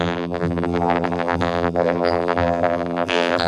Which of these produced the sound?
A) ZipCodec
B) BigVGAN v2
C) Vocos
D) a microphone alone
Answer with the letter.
B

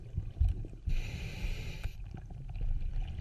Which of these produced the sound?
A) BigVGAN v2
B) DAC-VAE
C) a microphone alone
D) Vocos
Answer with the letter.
C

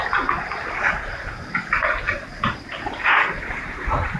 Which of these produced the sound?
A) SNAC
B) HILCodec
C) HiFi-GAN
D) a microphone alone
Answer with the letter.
D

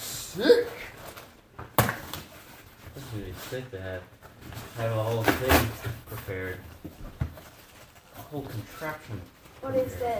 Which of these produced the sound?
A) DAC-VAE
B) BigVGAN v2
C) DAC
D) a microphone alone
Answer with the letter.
D